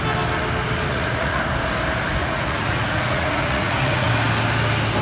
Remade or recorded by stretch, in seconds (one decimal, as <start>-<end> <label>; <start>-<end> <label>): 0.0-0.9 recorded; 0.9-1.4 remade; 1.4-2.2 recorded; 2.2-4.1 remade; 4.1-5.0 recorded